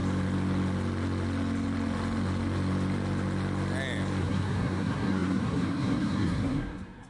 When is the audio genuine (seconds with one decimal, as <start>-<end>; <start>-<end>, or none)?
0.0-4.2